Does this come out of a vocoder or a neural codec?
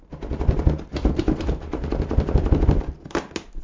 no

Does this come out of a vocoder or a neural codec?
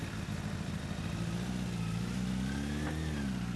no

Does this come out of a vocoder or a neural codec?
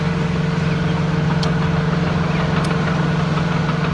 no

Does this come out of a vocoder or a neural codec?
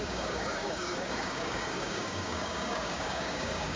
yes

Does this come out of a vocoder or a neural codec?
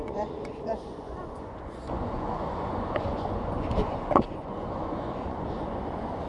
yes